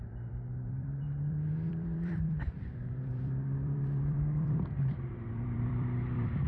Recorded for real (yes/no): no